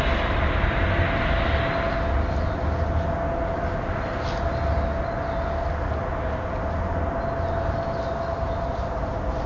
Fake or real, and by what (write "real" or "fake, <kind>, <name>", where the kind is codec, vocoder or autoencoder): real